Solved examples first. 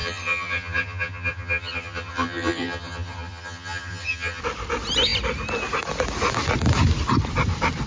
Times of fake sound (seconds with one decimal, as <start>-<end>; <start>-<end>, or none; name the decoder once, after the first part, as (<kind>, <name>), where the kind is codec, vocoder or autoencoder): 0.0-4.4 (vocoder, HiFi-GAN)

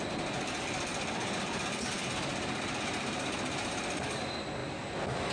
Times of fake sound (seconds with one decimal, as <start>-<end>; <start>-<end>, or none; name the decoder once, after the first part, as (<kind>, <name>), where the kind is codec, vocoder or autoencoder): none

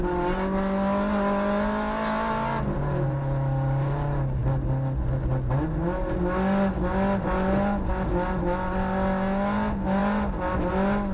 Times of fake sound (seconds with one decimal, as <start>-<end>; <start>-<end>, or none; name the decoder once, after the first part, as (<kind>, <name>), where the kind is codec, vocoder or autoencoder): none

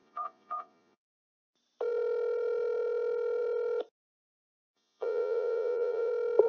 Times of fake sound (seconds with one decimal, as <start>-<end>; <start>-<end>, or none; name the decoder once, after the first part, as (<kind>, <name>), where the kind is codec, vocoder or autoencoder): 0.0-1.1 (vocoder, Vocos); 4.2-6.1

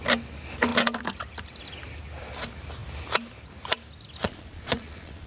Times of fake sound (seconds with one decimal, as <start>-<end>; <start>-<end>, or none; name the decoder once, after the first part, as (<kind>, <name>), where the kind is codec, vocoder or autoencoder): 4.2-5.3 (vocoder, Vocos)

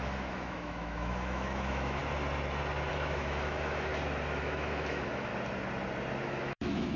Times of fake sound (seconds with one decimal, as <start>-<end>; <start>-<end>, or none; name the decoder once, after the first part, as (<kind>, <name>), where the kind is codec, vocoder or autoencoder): 0.0-2.0 (autoencoder, DAC-VAE); 2.9-3.9; 4.4-5.3; 6.2-7.0